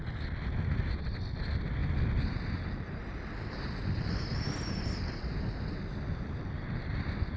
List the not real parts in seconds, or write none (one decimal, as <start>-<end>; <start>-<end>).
none

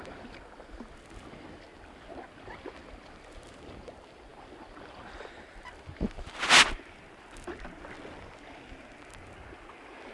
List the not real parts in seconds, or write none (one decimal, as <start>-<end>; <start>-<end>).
none

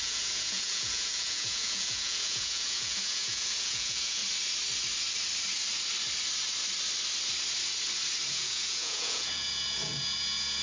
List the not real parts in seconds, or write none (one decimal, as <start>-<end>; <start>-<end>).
0.0-4.2; 8.3-10.6

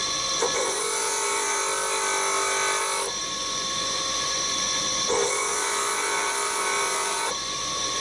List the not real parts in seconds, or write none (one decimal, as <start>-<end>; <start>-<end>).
0.0-1.6; 3.2-8.0

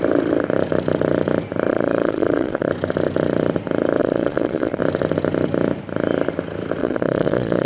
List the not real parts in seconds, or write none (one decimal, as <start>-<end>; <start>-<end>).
1.7-2.7; 4.0-4.8; 6.8-7.7

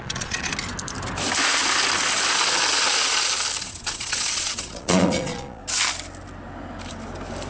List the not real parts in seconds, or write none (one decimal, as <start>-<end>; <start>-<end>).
0.0-0.5; 3.6-5.6

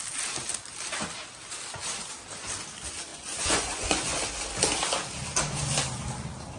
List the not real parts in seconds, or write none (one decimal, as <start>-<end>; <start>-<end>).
3.1-4.2